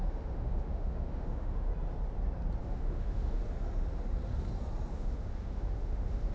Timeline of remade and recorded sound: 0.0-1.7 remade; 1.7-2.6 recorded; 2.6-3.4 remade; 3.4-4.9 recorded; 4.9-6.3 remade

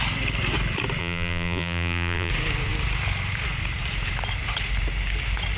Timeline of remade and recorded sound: 0.0-1.0 recorded; 1.0-2.3 remade; 2.3-5.6 recorded

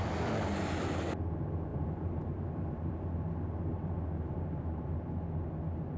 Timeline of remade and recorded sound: 0.0-1.7 recorded; 1.7-3.1 remade; 3.1-3.7 recorded; 3.7-4.9 remade; 4.9-6.0 recorded

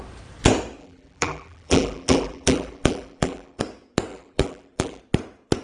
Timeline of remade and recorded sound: 0.0-0.8 recorded; 0.8-3.6 remade; 3.6-4.1 recorded; 4.1-5.0 remade; 5.0-5.6 recorded

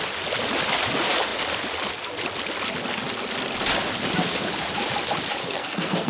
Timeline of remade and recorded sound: 0.0-5.4 recorded; 5.4-6.1 remade

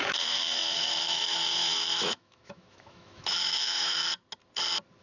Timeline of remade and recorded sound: 0.0-4.0 remade; 4.0-5.0 recorded